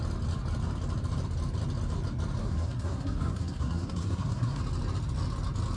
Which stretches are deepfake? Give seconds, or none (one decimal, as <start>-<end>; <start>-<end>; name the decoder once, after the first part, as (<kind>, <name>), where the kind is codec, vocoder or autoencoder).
2.4-4.6 (codec, SNAC)